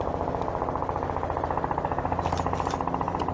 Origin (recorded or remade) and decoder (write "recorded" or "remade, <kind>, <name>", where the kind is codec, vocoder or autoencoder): recorded